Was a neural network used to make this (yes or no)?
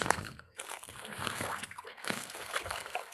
yes